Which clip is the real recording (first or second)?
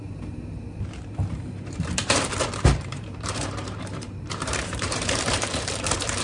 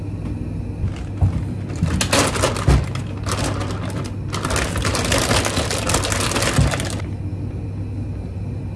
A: second